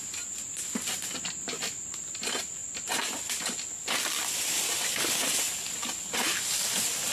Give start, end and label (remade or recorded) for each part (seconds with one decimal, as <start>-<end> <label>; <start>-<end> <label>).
0.0-2.6 recorded; 2.6-3.7 remade; 3.7-7.1 recorded